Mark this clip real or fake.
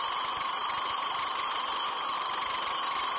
real